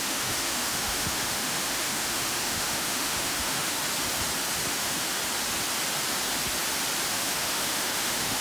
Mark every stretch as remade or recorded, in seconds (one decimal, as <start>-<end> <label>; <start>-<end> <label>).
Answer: 0.0-3.8 remade; 3.8-4.8 recorded; 4.8-5.2 remade; 5.2-7.1 recorded; 7.1-8.4 remade